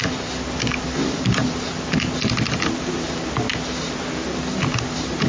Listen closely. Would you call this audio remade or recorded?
recorded